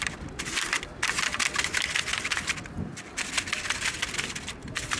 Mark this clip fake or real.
fake